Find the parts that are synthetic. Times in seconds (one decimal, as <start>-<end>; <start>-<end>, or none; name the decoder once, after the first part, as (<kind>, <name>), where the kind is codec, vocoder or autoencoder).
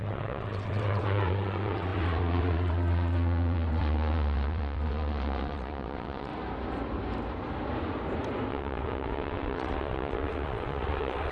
0.0-6.3 (vocoder, WaveNeXt); 8.5-11.3